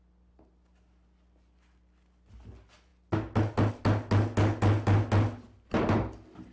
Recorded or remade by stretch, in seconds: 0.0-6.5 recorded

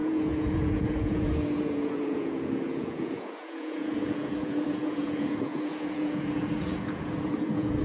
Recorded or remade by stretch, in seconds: 0.0-7.8 remade

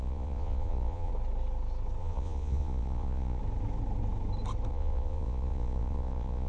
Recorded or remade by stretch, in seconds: 0.0-1.1 remade; 1.1-2.0 recorded; 2.0-3.4 remade; 3.4-4.7 recorded; 4.7-6.5 remade

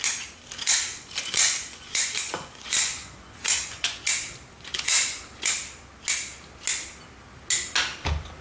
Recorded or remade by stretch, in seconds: 0.0-0.9 recorded; 0.9-4.0 remade; 4.0-4.7 recorded; 4.7-5.2 remade; 5.2-8.4 recorded

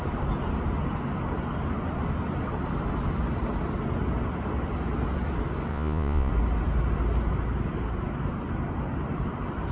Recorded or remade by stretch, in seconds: 0.0-5.7 recorded; 5.7-6.3 remade; 6.3-9.7 recorded

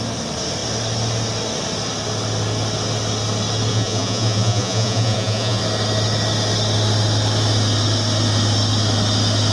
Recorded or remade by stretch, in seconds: 0.0-3.7 recorded; 3.7-5.6 remade; 5.6-9.5 recorded